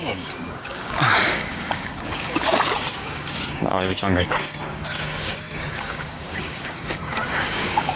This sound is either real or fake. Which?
fake